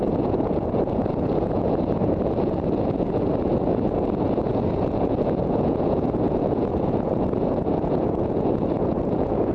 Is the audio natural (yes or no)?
no